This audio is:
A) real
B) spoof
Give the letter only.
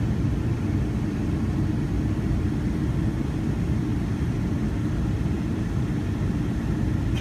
A